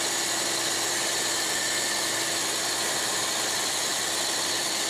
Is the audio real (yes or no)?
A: yes